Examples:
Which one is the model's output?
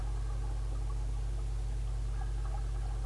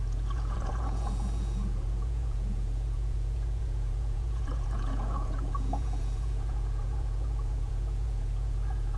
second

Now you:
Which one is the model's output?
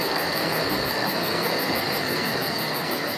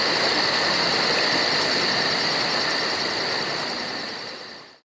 first